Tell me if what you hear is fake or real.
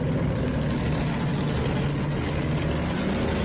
real